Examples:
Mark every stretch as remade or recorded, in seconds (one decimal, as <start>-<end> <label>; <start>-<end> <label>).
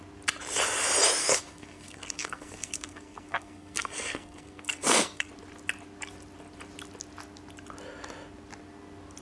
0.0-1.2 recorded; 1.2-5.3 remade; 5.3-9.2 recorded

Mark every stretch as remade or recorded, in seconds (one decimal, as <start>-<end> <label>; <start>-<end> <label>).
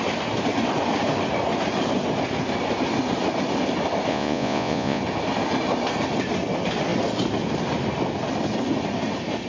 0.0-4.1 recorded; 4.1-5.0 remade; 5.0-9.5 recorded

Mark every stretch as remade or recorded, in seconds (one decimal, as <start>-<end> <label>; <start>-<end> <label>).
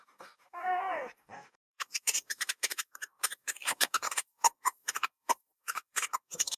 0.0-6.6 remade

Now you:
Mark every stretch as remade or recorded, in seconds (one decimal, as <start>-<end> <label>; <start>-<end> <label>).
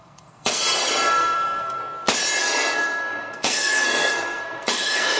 0.0-1.8 remade; 1.8-2.4 recorded; 2.4-5.2 remade